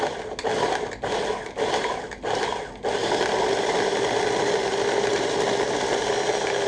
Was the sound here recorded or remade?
recorded